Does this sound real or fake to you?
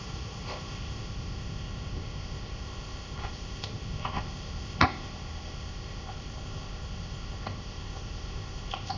fake